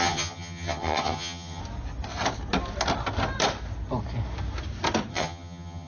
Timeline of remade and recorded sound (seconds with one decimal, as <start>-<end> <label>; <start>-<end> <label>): 0.0-1.6 remade; 1.6-5.1 recorded; 5.1-5.9 remade